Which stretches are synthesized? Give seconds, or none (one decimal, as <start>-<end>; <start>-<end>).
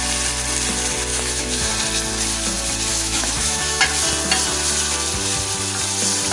1.1-1.7; 2.9-3.8